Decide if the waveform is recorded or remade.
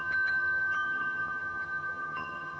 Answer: remade